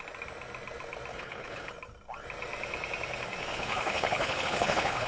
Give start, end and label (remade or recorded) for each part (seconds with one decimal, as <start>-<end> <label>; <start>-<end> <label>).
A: 0.0-1.1 recorded; 1.1-1.7 remade; 1.7-3.5 recorded; 3.5-5.1 remade